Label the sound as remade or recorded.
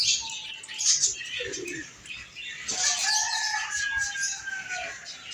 recorded